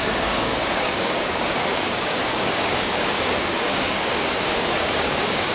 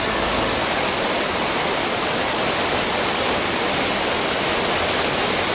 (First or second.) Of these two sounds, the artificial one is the first